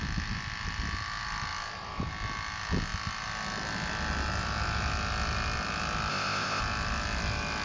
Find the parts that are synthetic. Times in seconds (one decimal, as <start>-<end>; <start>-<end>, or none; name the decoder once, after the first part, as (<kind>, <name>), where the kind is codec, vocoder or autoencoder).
6.1-6.6 (codec, ZipCodec)